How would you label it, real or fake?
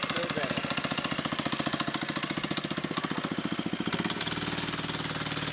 real